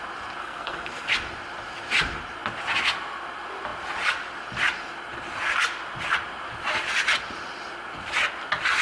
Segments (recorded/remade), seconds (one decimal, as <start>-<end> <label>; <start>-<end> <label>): 0.0-0.4 recorded; 0.4-1.1 remade; 1.1-8.8 recorded